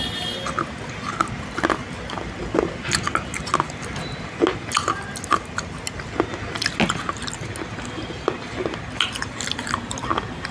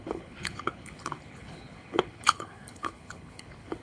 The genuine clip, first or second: first